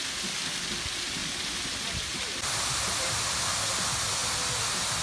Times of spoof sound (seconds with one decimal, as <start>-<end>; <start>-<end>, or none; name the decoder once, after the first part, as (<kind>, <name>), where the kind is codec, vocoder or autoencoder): 0.0-0.6 (vocoder, BigVGAN v2); 1.2-3.4

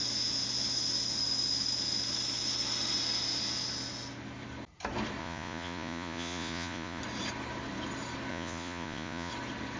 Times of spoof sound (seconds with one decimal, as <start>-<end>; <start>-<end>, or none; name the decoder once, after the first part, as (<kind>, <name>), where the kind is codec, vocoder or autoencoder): 5.2-7.0 (vocoder, Vocos); 8.3-9.3

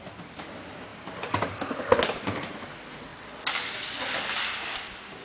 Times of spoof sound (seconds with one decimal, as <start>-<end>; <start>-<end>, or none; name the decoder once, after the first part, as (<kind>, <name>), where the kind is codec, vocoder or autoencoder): 0.9-1.5 (vocoder, BigVGAN v2)

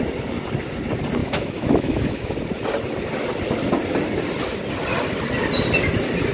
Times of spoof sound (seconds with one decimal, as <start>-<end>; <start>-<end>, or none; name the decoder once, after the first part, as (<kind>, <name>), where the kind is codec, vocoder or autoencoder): 1.2-2.4 (autoencoder, DAC-VAE)

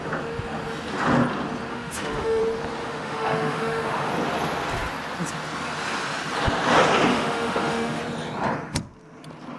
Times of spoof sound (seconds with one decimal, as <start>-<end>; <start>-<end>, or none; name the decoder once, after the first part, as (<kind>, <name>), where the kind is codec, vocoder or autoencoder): 1.7-2.4 (autoencoder, DAC-VAE); 2.8-4.1; 7.1-8.0